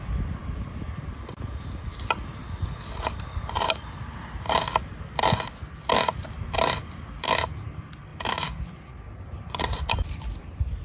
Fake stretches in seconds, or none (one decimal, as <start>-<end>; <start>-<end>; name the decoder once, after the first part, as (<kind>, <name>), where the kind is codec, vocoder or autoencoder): none